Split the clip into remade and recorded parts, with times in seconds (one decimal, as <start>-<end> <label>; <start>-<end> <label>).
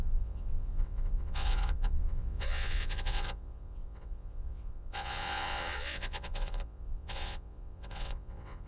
0.0-8.7 remade